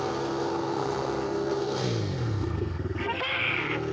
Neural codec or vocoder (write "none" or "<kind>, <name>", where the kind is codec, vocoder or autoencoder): codec, SNAC